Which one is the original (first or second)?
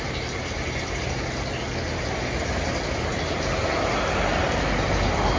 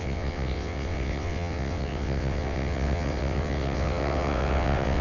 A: first